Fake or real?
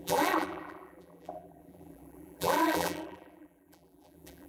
fake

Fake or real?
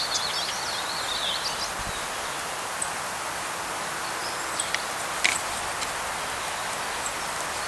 real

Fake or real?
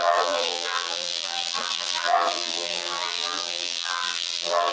fake